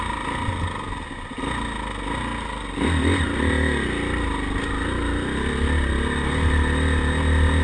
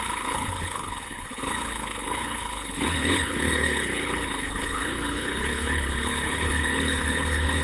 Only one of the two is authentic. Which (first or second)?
first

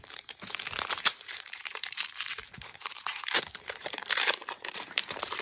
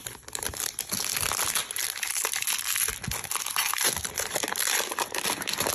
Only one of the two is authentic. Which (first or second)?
second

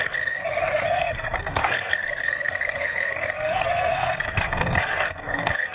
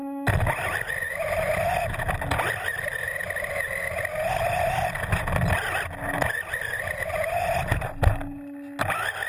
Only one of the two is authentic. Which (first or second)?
second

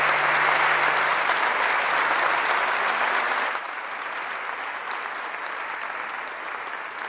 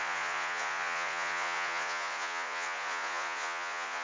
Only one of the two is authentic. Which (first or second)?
first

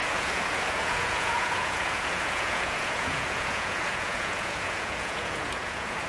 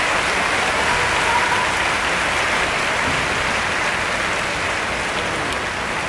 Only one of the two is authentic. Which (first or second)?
second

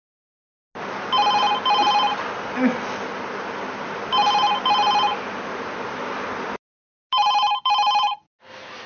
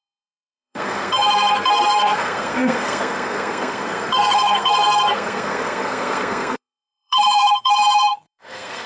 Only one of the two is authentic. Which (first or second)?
first